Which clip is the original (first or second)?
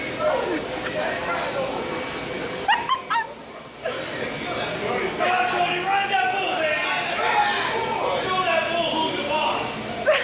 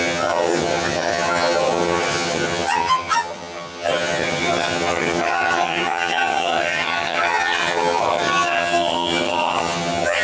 first